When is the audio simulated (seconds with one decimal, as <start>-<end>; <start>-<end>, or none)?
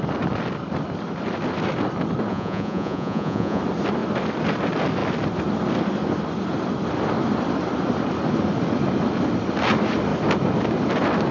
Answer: 2.3-3.6